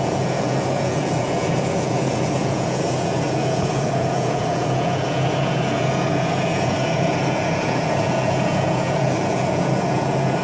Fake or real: fake